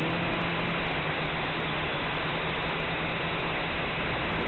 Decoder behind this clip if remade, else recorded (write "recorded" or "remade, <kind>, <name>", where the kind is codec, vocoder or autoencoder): recorded